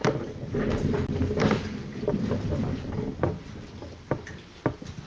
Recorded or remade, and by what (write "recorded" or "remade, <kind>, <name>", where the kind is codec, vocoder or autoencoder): recorded